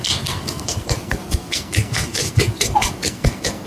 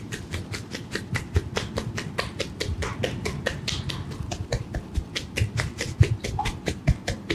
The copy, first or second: first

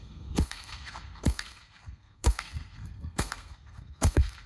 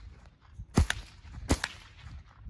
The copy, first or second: first